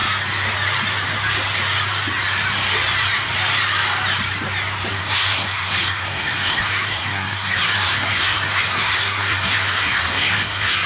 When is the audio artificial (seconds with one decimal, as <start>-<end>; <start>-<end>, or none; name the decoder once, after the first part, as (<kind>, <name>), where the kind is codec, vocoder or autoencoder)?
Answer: 4.9-10.9 (codec, SNAC)